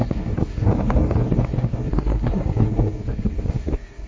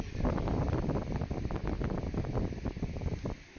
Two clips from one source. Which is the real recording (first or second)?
second